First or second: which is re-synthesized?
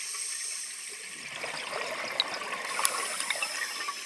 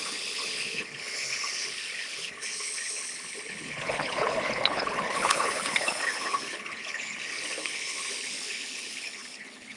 second